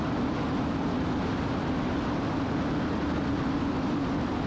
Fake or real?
real